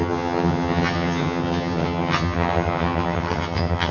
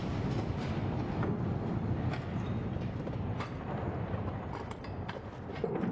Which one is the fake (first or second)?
first